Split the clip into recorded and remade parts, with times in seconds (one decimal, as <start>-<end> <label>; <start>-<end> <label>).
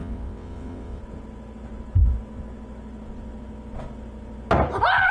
0.0-1.0 remade; 1.0-5.1 recorded